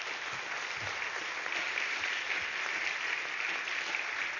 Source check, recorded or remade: recorded